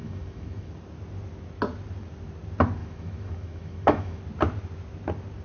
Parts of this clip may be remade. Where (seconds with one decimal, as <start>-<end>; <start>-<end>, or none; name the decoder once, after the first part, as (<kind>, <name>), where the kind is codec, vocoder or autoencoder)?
0.0-0.7 (autoencoder, DAC-VAE); 2.8-4.2